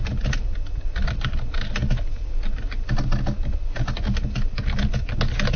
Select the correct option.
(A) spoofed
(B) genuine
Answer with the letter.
B